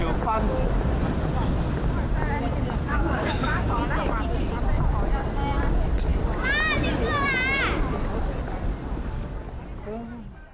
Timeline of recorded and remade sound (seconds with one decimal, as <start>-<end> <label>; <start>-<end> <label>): 0.0-2.9 recorded; 2.9-3.8 remade; 3.8-10.5 recorded